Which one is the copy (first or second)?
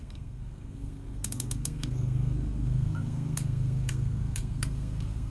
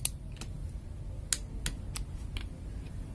first